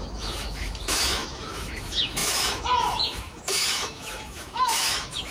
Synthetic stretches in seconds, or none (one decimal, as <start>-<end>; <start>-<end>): 0.0-5.3